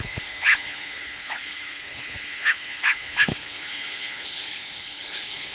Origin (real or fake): fake